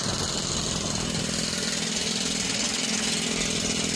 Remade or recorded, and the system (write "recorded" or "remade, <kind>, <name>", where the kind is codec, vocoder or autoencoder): recorded